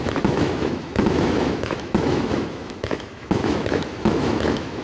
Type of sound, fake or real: fake